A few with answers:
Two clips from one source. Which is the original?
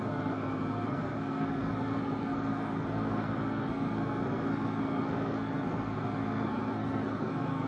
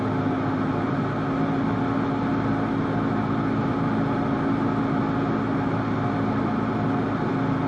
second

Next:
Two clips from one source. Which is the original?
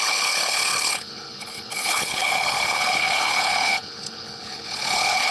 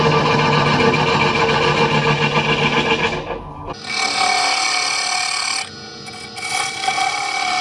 second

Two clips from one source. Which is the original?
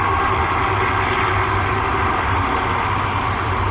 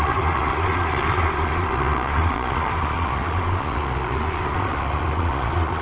first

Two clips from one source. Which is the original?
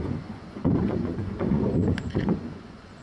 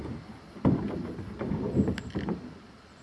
second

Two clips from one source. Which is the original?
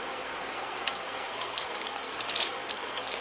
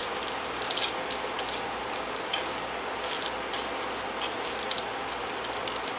second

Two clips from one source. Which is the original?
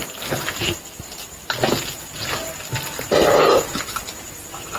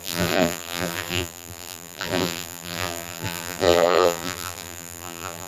first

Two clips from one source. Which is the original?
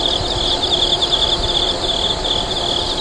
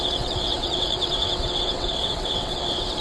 first